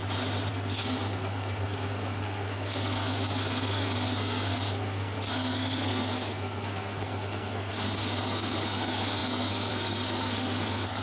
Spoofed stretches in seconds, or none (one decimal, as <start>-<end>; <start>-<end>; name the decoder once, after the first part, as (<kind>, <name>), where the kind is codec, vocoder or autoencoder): 0.5-11.0 (codec, SNAC)